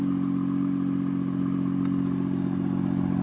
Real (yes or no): yes